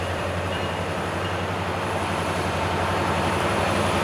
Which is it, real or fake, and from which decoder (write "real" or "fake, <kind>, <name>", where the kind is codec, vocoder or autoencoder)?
fake, vocoder, BigVGAN v2